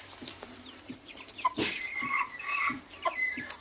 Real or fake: fake